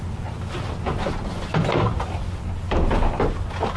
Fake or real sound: real